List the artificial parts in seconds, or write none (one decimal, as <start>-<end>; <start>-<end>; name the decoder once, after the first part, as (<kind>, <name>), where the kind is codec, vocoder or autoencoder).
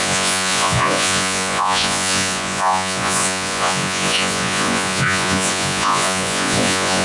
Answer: 0.0-7.0 (vocoder, Vocos)